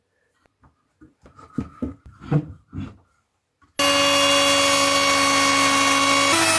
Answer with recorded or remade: recorded